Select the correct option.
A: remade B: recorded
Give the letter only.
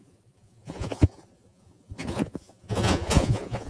A